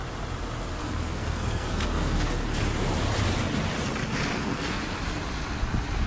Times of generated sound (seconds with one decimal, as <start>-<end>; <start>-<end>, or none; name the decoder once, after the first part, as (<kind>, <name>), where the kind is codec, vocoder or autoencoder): 0.8-2.6 (codec, SNAC); 4.3-4.8